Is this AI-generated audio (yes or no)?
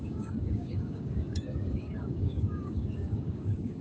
yes